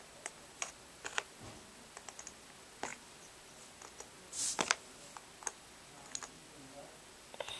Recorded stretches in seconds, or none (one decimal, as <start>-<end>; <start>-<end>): 0.0-7.6